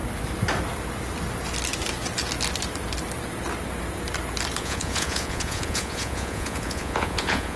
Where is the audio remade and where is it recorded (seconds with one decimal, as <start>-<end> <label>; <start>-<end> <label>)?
0.0-4.6 recorded; 4.6-7.6 remade